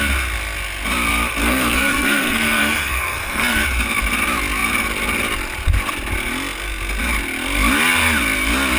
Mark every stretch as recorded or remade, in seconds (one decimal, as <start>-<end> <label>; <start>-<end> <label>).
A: 0.0-1.4 recorded; 1.4-3.6 remade; 3.6-8.8 recorded